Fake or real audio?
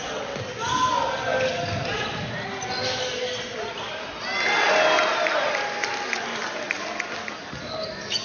real